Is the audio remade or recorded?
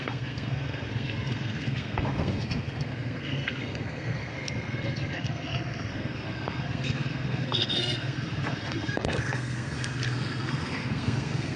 remade